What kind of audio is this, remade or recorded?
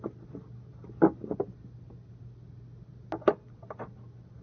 recorded